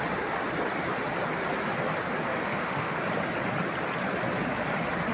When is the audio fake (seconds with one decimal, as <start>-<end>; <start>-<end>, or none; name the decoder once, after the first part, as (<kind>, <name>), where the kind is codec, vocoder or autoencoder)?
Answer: 2.3-3.0 (autoencoder, DAC-VAE)